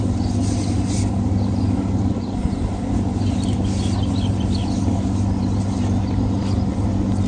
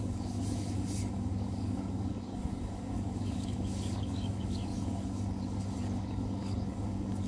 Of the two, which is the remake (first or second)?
second